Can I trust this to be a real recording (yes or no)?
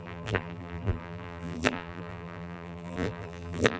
no